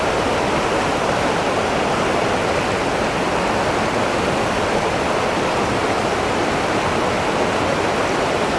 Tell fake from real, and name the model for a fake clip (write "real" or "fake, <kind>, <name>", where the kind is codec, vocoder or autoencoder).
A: real